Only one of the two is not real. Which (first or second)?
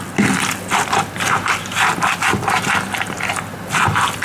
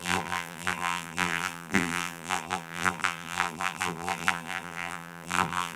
second